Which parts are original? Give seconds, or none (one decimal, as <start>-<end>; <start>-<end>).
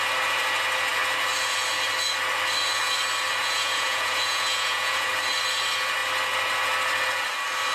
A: 0.0-3.4; 5.1-7.7